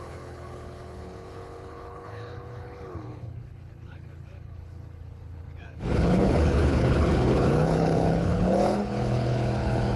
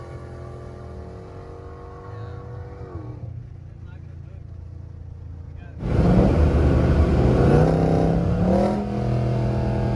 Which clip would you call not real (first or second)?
first